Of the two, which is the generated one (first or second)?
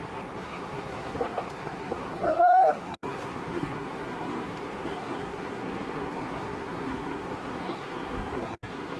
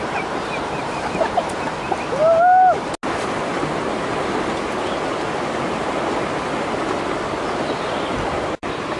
first